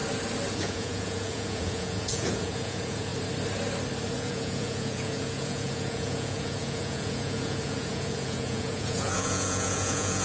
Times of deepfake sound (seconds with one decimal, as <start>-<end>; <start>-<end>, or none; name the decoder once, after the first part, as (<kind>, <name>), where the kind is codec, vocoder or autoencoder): 0.5-3.1 (vocoder, Vocos); 4.1-10.2